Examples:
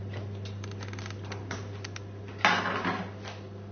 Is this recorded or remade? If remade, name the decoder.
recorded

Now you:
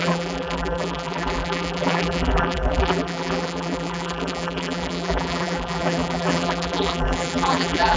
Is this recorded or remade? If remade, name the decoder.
remade, vocoder, BigVGAN v2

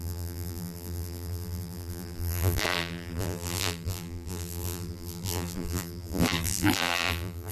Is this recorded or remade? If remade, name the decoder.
remade, vocoder, BigVGAN v2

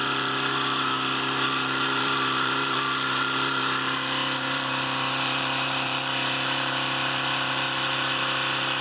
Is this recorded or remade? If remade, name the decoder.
remade, vocoder, BigVGAN v2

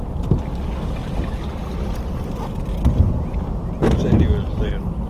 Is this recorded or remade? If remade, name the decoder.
recorded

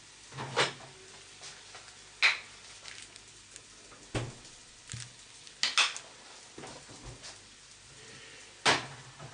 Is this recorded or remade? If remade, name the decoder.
recorded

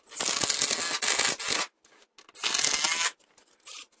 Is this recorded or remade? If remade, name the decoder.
recorded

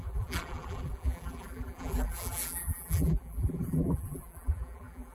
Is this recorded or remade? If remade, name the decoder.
remade, vocoder, BigVGAN v2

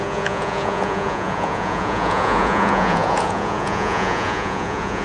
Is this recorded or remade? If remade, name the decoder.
remade, vocoder, Vocos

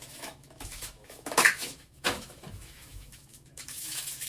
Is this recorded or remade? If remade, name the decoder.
remade, autoencoder, DAC-VAE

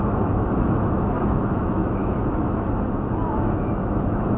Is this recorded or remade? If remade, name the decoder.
remade, autoencoder, DAC-VAE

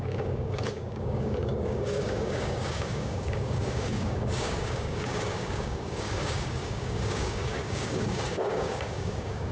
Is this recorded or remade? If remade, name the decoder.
remade, codec, DAC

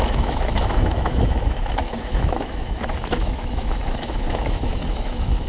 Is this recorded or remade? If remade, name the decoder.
remade, autoencoder, DAC-VAE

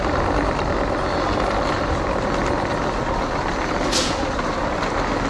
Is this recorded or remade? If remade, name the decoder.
recorded